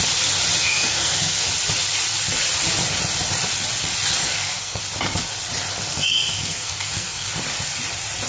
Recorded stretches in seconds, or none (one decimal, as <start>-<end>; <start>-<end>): 0.0-0.6; 1.5-4.2; 4.8-5.9; 7.3-8.3